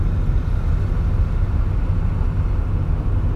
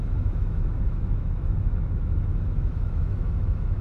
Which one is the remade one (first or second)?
second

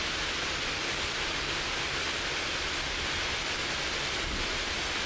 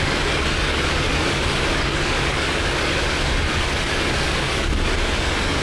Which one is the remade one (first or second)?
second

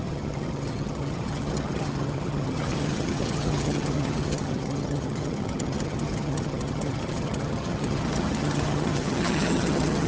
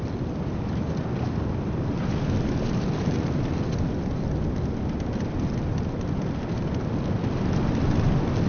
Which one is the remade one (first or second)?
first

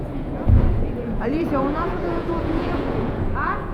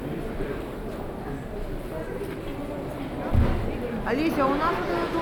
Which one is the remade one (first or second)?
first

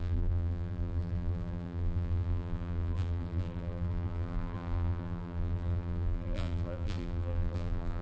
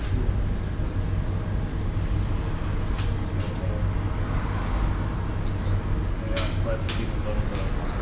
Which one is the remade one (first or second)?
first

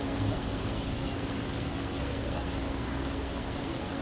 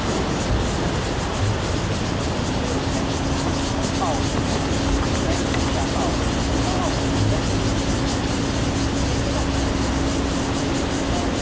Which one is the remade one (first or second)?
first